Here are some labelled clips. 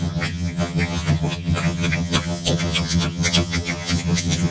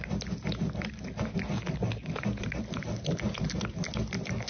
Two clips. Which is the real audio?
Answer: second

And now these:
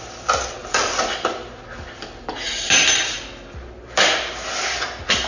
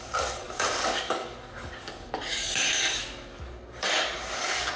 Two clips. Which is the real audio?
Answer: first